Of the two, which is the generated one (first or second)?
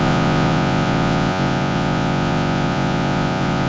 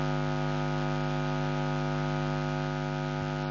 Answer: first